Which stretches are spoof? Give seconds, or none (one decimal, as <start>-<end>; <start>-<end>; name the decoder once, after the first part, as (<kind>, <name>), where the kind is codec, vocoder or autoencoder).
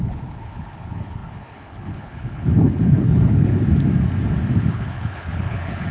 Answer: 0.0-3.5 (codec, HILCodec); 4.7-5.9